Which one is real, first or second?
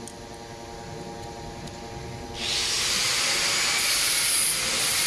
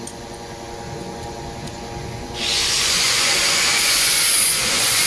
first